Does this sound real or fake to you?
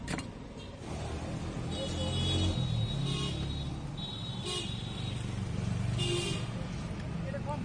real